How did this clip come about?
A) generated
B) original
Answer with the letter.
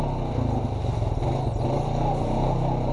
B